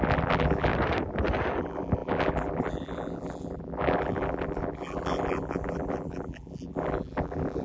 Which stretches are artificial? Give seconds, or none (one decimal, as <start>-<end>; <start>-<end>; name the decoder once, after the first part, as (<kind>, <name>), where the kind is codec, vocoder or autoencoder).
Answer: 0.0-0.7 (vocoder, BigVGAN v2); 1.6-7.6